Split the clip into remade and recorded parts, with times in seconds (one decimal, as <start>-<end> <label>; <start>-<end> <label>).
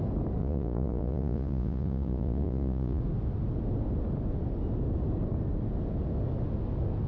0.0-0.4 recorded; 0.4-3.0 remade; 3.0-7.1 recorded